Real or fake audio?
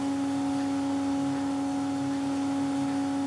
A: real